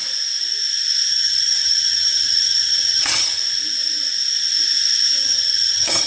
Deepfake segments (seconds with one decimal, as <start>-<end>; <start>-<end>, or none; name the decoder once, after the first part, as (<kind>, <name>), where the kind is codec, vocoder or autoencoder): 1.1-3.4 (vocoder, HiFi-GAN); 5.2-6.1